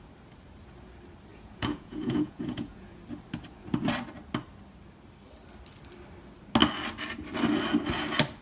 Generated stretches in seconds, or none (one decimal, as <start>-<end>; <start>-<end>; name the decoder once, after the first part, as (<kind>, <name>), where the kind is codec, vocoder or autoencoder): 1.3-3.0 (vocoder, Vocos)